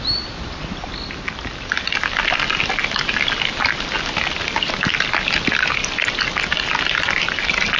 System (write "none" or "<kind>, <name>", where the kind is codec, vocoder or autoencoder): none